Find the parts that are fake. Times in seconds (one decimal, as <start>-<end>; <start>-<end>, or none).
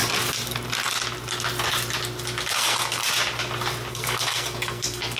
2.5-3.0; 3.9-5.2